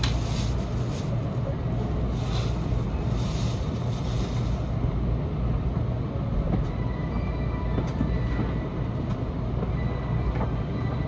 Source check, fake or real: real